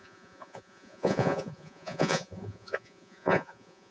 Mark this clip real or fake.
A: fake